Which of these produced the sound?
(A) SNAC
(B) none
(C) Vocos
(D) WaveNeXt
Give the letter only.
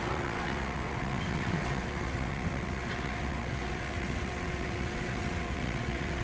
D